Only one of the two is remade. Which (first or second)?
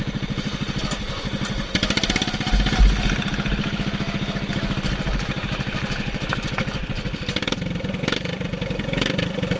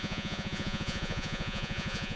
second